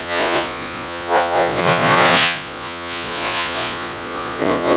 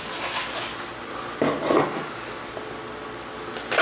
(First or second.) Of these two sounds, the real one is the second